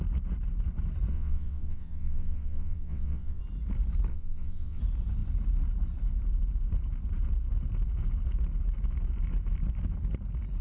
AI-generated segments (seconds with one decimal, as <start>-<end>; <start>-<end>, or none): 1.1-3.4; 4.1-4.8